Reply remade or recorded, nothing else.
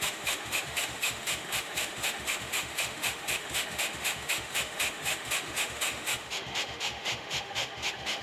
remade